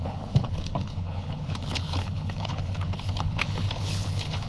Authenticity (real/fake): fake